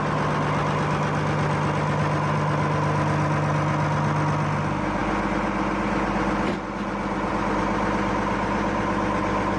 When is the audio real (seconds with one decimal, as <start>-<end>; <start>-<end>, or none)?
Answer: 0.0-9.6